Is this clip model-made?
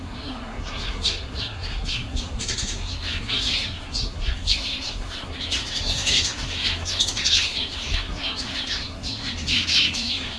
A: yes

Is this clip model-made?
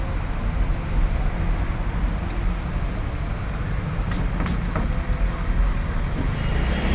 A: no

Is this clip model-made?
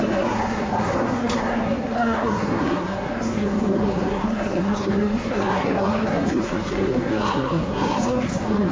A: yes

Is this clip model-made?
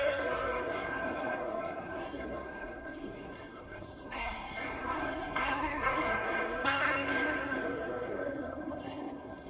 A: yes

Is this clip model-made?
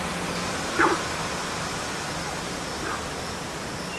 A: no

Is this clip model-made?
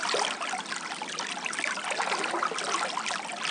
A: no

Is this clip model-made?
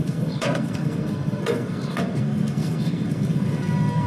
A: yes